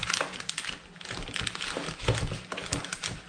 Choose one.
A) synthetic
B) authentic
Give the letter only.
B